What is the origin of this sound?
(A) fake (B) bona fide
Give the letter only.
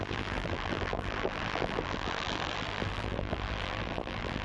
A